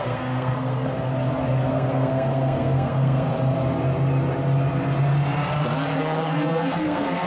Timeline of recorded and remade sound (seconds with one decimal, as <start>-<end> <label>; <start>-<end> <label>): 0.0-1.1 remade; 1.1-1.7 recorded; 1.7-3.3 remade; 3.3-6.0 recorded; 6.0-7.3 remade